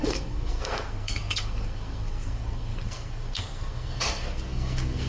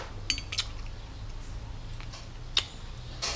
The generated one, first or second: first